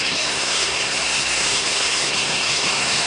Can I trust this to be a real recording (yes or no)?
no